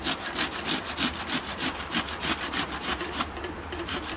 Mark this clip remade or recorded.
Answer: remade